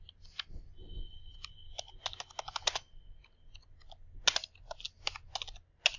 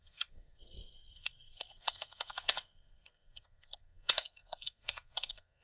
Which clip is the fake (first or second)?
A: second